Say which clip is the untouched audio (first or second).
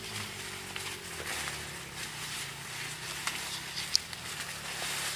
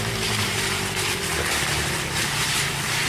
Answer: first